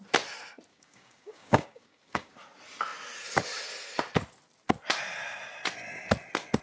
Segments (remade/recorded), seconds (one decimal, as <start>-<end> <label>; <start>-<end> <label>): 0.0-0.7 recorded; 0.7-2.4 remade; 2.4-6.6 recorded